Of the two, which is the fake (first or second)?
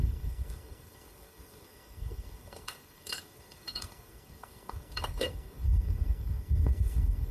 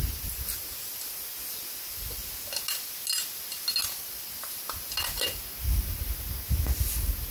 first